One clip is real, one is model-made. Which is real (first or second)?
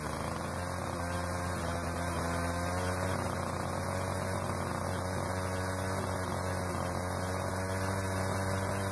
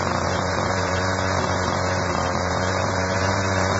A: first